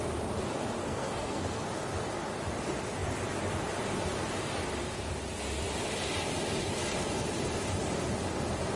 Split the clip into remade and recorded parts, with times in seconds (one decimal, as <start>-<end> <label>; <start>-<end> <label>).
0.0-0.8 recorded; 0.8-1.7 remade; 1.7-8.8 recorded